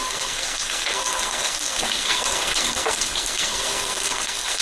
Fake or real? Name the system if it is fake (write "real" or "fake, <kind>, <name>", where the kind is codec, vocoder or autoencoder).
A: fake, codec, SNAC